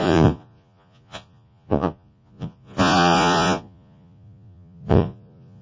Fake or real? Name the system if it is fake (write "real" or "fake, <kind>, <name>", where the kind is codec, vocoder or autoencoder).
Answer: fake, vocoder, Vocos